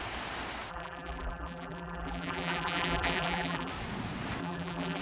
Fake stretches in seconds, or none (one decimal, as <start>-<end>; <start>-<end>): 0.7-3.7; 4.4-5.0